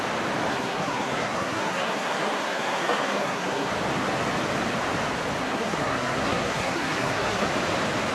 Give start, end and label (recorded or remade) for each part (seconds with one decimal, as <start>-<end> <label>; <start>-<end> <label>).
0.0-0.5 recorded; 0.5-3.7 remade; 3.7-5.4 recorded; 5.4-7.5 remade; 7.5-8.1 recorded